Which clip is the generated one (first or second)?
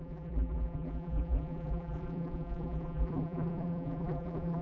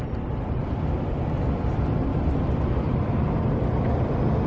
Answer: first